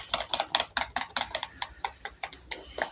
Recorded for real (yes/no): yes